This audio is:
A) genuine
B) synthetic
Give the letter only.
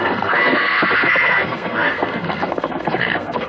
B